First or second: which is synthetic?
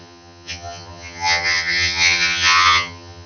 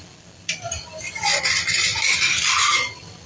first